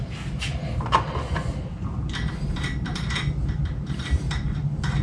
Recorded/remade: recorded